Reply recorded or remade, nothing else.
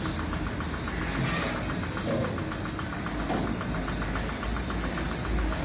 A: recorded